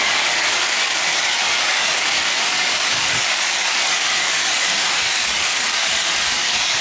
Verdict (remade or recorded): remade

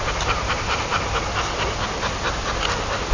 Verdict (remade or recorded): recorded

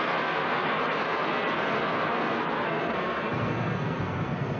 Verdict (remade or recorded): remade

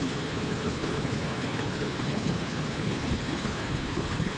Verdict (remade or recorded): remade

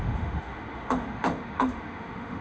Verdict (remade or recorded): remade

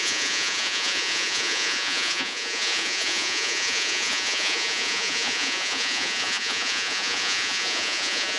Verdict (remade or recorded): remade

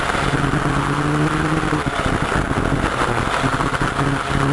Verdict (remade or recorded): recorded